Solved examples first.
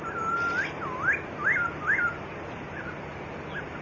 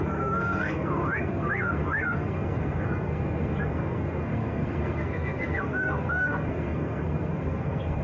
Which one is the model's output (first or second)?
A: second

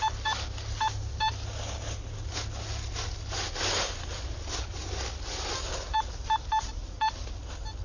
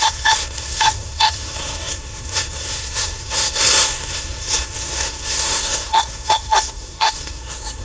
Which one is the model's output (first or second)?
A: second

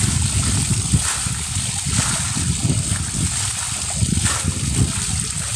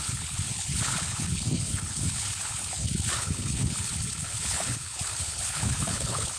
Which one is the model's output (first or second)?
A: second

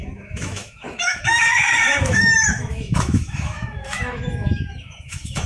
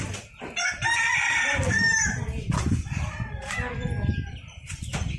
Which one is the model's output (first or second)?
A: first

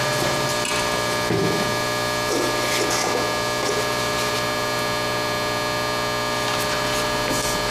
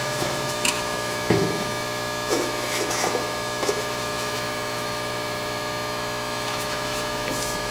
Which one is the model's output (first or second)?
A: second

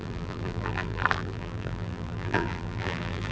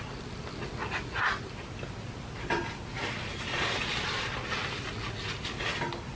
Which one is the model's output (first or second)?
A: first